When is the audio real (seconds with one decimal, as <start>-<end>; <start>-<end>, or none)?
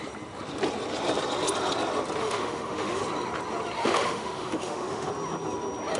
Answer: 0.0-2.2; 3.0-3.8; 5.1-6.0